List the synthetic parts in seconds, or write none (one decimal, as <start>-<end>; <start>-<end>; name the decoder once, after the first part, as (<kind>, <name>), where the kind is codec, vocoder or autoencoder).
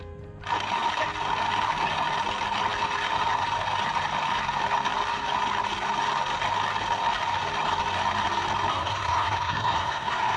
8.7-10.4 (codec, SNAC)